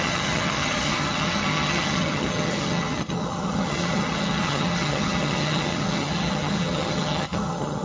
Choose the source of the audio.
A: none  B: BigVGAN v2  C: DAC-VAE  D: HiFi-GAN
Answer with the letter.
D